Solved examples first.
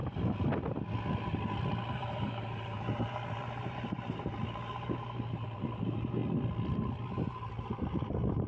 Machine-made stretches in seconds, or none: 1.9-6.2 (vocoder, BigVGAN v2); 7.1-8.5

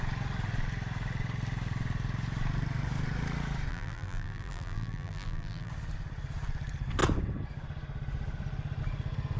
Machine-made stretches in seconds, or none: 3.7-5.7 (vocoder, BigVGAN v2)

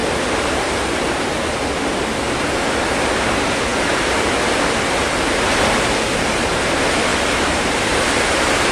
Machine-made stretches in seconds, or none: 0.0-0.7 (vocoder, BigVGAN v2); 7.1-8.7

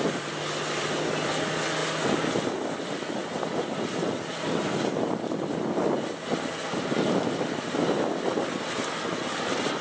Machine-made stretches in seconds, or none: none